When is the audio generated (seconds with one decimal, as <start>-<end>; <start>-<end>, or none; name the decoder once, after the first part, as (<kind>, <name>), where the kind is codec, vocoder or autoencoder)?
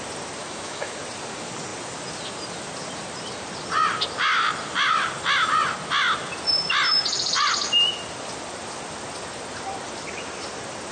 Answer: 0.4-1.0 (autoencoder, DAC-VAE)